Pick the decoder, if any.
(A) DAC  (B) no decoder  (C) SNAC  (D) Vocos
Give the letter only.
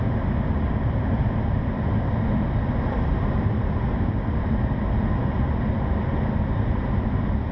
B